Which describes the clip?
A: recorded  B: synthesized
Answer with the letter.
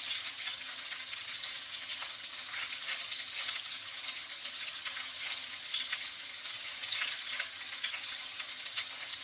B